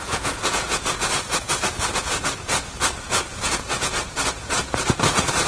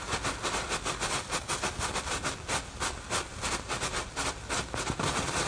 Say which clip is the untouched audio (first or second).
second